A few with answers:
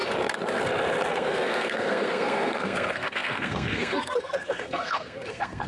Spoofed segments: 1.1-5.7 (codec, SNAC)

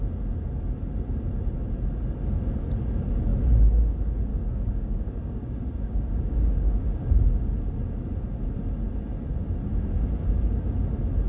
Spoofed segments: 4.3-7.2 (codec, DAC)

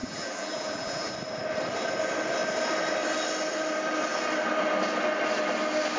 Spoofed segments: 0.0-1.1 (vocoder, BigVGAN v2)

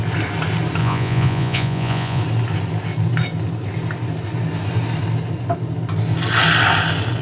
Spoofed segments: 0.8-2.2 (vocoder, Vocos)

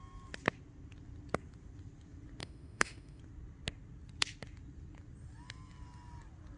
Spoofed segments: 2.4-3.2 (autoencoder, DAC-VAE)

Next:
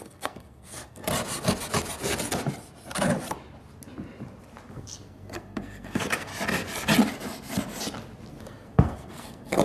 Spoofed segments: 0.0-1.0 (codec, SNAC); 4.7-6.3; 8.3-9.6

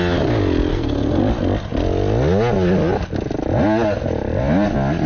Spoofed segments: 0.7-1.2 (codec, SNAC)